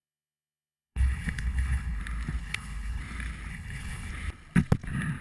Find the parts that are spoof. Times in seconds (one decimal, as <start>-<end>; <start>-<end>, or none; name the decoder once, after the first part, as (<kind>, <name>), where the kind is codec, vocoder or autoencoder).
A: 0.0-2.0 (codec, HILCodec); 2.4-3.0; 3.5-4.1